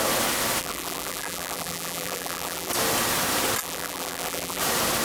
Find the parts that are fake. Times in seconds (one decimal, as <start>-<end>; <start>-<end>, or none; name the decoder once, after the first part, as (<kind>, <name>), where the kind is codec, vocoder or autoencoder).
0.6-2.7 (vocoder, BigVGAN v2); 3.6-4.6